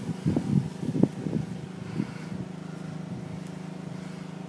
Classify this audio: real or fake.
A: real